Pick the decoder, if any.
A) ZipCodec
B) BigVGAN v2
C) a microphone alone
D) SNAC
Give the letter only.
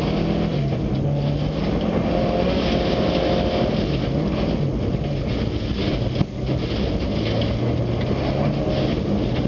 C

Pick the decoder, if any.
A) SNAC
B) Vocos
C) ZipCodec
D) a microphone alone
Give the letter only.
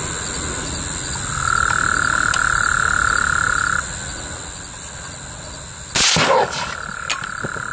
D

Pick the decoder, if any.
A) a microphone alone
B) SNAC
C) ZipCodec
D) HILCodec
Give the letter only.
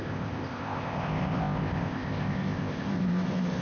C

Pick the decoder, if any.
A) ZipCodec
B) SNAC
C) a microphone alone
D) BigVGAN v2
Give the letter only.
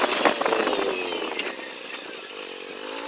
C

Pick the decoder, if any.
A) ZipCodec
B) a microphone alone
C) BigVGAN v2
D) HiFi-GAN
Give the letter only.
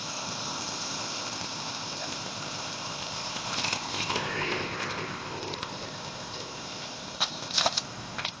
A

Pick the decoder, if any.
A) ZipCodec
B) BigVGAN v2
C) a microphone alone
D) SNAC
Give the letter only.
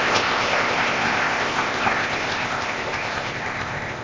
A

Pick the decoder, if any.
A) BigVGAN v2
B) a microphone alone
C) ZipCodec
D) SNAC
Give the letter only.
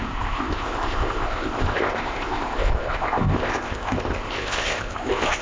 C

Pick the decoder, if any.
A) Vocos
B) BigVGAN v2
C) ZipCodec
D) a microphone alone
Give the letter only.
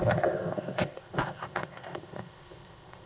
C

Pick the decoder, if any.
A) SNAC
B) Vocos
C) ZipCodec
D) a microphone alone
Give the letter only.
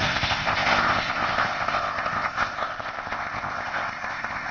C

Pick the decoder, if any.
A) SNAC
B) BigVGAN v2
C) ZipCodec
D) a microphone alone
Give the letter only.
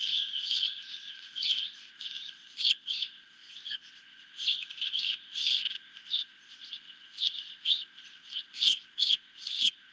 C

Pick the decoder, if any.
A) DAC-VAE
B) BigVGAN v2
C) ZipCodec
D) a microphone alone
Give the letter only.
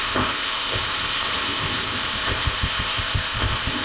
C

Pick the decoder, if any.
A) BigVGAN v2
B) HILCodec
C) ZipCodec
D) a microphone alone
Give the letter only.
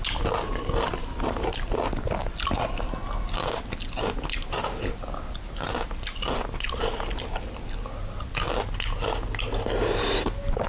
D